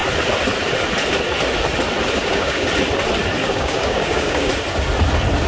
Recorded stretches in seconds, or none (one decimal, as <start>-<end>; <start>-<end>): 0.0-2.2; 2.7-3.4; 4.5-5.5